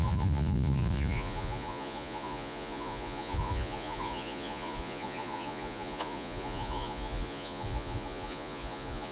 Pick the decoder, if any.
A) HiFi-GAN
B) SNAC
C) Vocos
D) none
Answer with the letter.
C